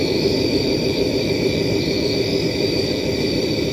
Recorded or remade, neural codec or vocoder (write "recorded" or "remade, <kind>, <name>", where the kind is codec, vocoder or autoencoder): remade, vocoder, BigVGAN v2